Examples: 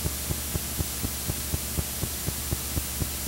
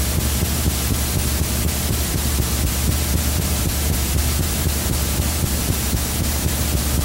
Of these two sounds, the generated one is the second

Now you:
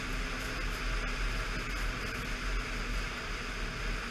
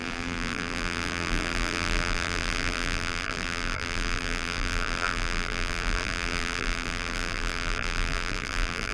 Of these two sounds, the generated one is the second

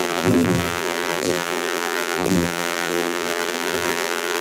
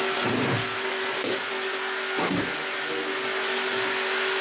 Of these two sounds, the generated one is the first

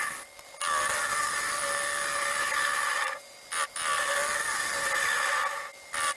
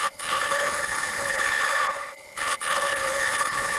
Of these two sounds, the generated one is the second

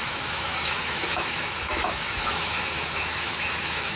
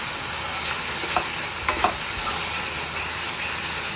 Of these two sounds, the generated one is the first